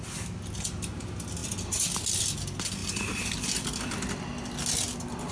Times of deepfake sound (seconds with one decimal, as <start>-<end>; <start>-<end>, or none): none